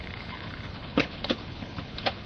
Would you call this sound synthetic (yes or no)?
yes